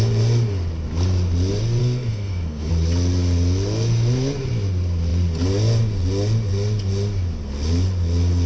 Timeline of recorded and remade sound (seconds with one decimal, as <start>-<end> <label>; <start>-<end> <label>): 0.0-1.8 recorded; 1.8-2.7 remade; 2.7-8.5 recorded